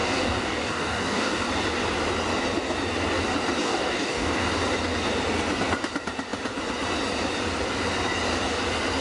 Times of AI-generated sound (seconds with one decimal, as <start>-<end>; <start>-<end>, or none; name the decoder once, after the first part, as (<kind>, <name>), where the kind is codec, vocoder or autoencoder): 0.0-1.5 (codec, DAC); 3.6-4.5